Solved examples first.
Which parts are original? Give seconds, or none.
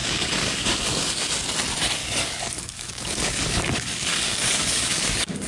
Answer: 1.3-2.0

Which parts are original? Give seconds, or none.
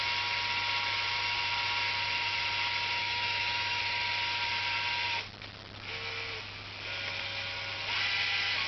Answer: 0.0-3.0; 3.8-8.7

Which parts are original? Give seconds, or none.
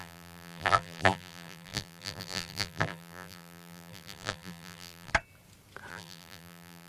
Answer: 5.1-5.9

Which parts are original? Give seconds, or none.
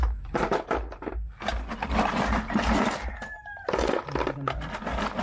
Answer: 0.0-5.2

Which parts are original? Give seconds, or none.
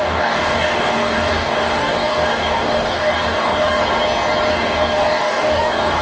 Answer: 3.8-4.5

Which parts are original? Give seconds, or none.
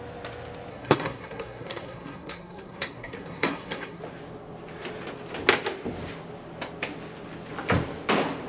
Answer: 0.0-0.7; 4.0-8.5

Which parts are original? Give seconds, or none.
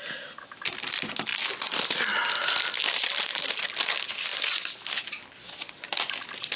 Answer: 0.0-6.6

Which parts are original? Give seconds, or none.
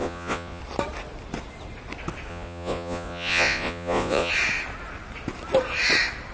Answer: 0.6-2.3; 4.3-6.3